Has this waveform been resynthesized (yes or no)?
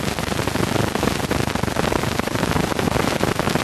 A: no